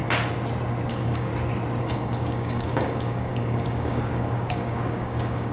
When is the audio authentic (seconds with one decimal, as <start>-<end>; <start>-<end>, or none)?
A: 0.0-0.9; 1.3-1.8